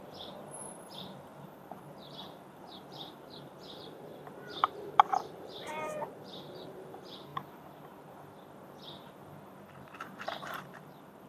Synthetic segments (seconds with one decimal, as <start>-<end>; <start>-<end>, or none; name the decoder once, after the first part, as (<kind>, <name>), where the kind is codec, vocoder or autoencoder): 0.0-7.3 (vocoder, BigVGAN v2); 9.7-11.3

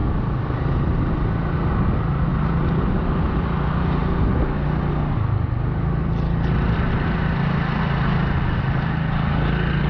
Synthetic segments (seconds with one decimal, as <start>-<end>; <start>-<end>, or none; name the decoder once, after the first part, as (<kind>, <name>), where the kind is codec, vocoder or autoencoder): 0.0-1.0 (vocoder, BigVGAN v2); 2.3-3.0

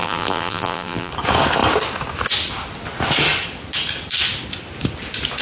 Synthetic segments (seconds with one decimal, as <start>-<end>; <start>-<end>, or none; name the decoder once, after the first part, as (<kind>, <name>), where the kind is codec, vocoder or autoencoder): 0.0-1.1 (vocoder, BigVGAN v2)

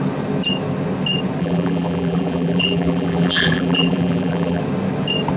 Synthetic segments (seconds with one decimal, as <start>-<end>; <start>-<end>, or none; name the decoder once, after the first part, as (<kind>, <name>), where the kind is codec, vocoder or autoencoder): 1.4-4.6 (vocoder, BigVGAN v2)

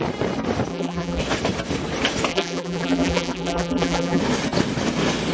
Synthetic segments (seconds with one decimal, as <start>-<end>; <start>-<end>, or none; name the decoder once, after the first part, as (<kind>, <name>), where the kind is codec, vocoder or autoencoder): 0.7-1.2 (vocoder, BigVGAN v2); 2.3-4.2